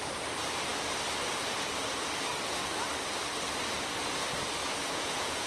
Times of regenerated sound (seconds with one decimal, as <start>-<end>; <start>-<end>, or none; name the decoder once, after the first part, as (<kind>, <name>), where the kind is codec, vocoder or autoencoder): 4.6-5.5 (vocoder, Vocos)